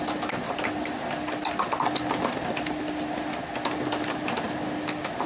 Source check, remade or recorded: recorded